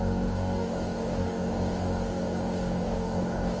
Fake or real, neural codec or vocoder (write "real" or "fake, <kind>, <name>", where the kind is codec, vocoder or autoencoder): fake, codec, DAC